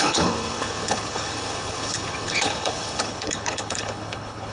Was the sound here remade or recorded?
remade